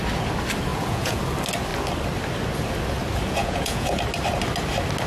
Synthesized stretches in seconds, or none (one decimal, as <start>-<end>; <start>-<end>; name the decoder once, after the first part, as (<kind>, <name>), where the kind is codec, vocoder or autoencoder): 0.7-1.2 (vocoder, Vocos); 3.4-4.0